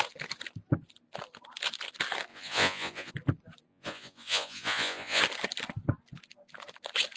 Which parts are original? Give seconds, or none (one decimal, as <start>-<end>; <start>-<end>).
0.0-2.3; 3.1-3.7; 5.2-7.2